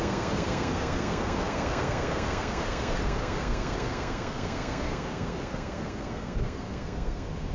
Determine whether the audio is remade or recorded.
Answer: remade